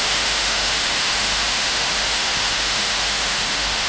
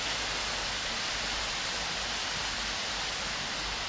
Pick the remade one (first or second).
first